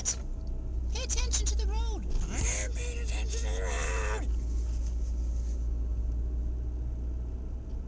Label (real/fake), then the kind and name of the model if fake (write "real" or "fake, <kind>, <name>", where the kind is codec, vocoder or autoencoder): real